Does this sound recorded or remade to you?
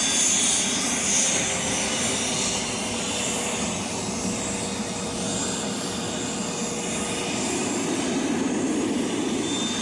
recorded